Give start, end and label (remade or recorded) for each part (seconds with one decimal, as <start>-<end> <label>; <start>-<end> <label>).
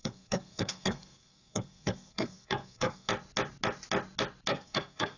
0.0-3.1 remade; 3.1-4.5 recorded; 4.5-5.2 remade